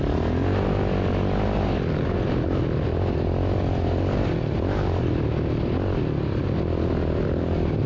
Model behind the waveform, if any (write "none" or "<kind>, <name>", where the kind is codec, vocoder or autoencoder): none